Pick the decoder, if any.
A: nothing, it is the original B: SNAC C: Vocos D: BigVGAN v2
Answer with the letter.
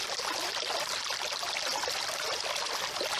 A